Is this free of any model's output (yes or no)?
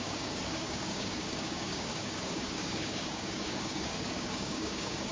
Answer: no